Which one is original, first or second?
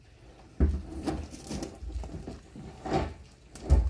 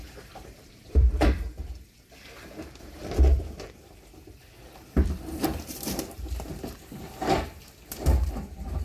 first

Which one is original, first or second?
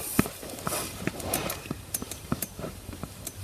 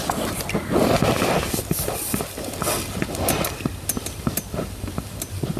second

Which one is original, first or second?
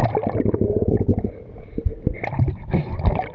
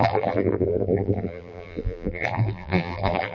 first